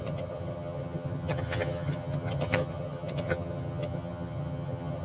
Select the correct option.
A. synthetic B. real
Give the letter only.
A